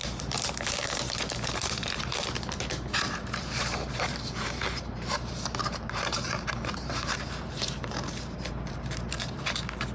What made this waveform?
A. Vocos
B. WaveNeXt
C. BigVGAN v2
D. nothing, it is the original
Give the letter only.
C